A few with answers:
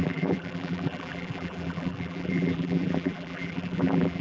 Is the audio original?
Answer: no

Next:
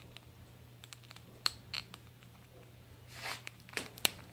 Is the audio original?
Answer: no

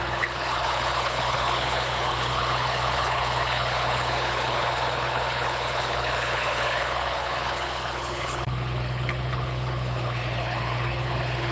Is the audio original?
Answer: no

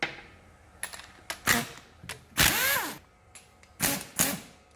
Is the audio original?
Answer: yes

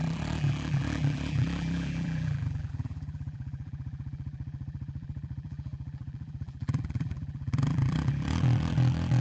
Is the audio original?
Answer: no